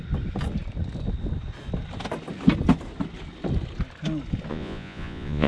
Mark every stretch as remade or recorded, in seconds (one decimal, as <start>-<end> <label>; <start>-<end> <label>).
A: 0.0-4.5 recorded; 4.5-5.5 remade

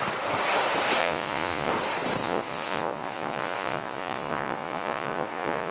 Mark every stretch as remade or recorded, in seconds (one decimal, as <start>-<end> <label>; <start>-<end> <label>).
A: 0.0-1.0 recorded; 1.0-1.7 remade; 1.7-2.2 recorded; 2.2-5.7 remade

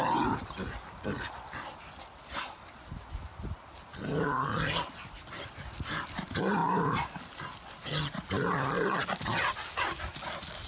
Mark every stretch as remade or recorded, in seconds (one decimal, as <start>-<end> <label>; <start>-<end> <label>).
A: 0.0-10.7 recorded

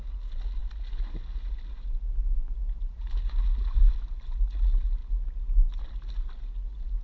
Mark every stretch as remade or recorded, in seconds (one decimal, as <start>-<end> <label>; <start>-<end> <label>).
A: 0.0-7.0 recorded

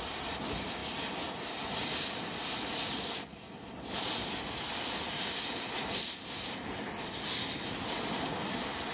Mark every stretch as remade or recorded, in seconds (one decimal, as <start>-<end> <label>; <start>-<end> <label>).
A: 0.0-8.9 recorded

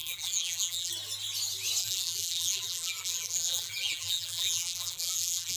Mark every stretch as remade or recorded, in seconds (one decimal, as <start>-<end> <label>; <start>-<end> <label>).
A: 0.0-0.9 remade; 0.9-1.8 recorded; 1.8-5.6 remade

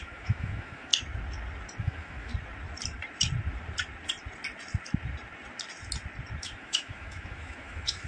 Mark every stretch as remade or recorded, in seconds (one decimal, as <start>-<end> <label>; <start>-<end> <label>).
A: 0.0-0.9 remade; 0.9-1.8 recorded; 1.8-2.3 remade; 2.3-6.4 recorded; 6.4-8.1 remade